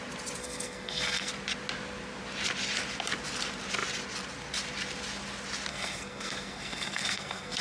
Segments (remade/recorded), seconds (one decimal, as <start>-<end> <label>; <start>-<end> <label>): 0.0-0.4 recorded; 0.4-1.3 remade; 1.3-5.7 recorded; 5.7-7.6 remade